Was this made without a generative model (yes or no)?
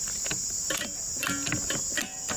yes